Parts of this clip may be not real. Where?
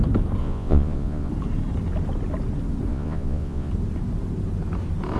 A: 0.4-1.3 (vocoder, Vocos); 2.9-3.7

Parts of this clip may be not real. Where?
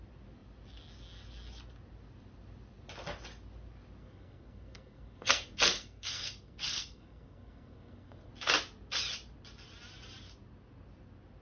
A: 4.0-8.3 (codec, SNAC)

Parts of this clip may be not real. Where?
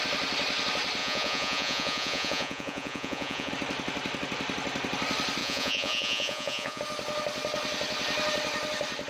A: 1.0-3.5 (vocoder, Vocos); 5.4-6.8